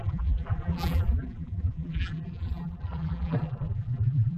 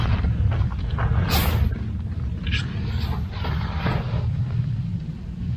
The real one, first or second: second